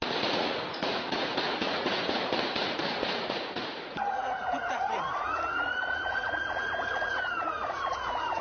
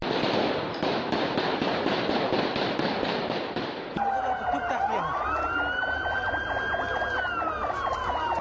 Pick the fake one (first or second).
first